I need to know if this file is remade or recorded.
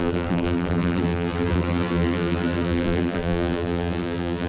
remade